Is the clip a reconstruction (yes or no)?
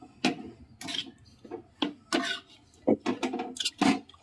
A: no